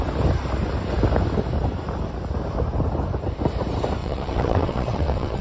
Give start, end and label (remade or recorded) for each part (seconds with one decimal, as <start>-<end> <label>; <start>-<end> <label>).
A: 0.0-4.0 recorded; 4.0-5.4 remade